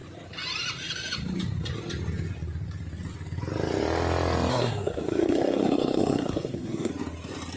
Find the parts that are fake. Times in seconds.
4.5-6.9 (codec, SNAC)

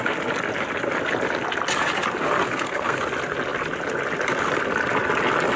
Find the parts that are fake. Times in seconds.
2.5-3.0 (codec, SNAC)